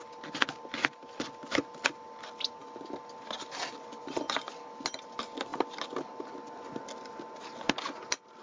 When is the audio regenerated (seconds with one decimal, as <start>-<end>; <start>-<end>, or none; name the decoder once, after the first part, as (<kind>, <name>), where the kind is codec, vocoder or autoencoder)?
none